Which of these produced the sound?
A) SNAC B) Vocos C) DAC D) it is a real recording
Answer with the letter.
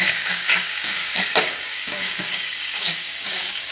C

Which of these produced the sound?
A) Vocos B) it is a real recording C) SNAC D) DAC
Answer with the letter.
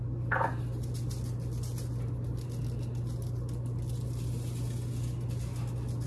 B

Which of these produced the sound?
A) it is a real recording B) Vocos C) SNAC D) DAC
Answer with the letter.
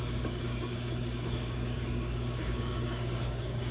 D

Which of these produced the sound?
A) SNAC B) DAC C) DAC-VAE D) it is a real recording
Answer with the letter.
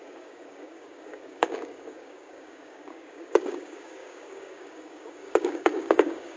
B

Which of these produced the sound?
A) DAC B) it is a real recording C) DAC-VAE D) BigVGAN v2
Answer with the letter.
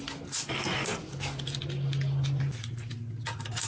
B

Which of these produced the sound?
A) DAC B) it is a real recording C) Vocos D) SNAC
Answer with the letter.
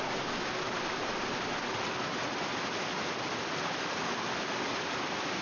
B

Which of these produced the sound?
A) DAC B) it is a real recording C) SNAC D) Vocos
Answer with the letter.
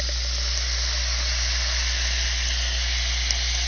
B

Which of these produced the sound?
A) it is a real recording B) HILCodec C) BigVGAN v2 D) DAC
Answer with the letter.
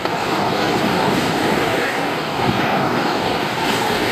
D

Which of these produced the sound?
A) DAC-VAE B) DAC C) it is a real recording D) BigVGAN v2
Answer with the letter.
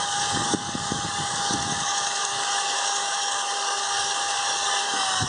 B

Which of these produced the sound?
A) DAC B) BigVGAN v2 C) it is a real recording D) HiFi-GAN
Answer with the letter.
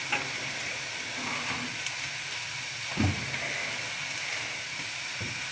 C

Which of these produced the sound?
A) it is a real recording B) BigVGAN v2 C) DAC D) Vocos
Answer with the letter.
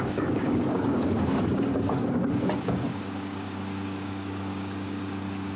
C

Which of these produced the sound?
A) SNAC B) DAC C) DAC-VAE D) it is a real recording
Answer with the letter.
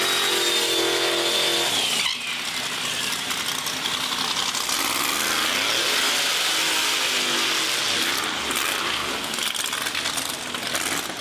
D